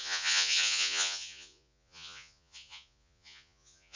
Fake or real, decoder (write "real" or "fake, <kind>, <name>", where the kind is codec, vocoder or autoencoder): fake, vocoder, Vocos